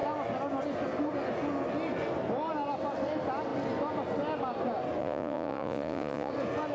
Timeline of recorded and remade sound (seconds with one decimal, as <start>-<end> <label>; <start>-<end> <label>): 0.0-5.0 recorded; 5.0-6.3 remade; 6.3-6.7 recorded